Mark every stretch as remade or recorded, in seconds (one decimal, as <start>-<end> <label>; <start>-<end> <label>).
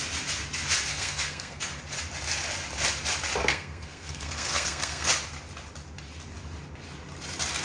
0.0-0.9 recorded; 0.9-1.8 remade; 1.8-3.4 recorded; 3.4-5.1 remade; 5.1-7.6 recorded